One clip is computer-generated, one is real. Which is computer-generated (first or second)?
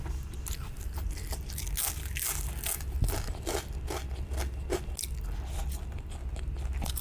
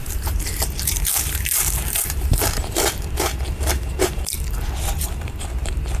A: second